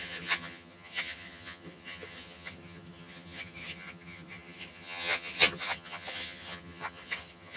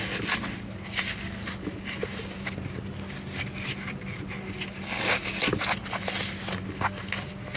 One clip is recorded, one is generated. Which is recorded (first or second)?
second